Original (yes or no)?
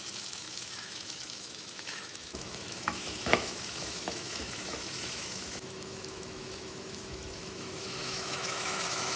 no